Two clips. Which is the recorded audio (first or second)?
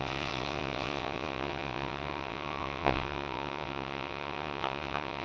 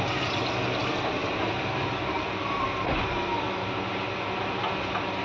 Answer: second